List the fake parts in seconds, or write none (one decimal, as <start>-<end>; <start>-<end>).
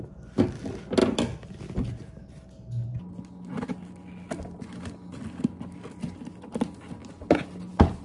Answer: none